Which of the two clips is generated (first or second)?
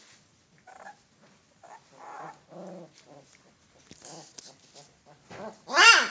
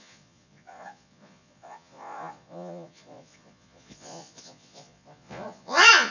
second